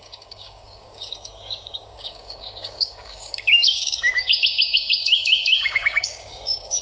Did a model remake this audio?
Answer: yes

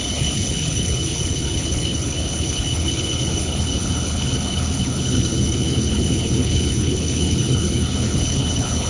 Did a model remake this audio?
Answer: yes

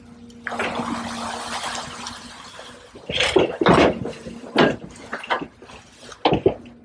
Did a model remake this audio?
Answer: no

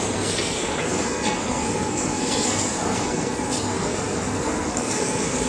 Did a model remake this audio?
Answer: yes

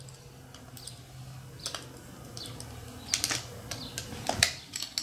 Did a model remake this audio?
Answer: no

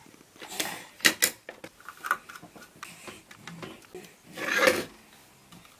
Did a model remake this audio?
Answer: no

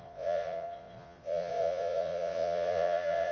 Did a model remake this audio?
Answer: yes